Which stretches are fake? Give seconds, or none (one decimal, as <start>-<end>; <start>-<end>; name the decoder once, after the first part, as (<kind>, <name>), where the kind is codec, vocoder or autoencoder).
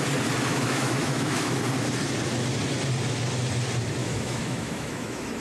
0.5-1.6 (autoencoder, DAC-VAE); 4.0-5.4